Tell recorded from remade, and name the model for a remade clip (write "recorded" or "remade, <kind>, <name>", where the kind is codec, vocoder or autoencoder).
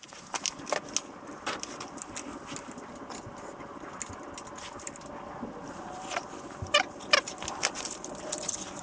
recorded